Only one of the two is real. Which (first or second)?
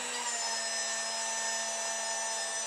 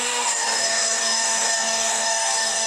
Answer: first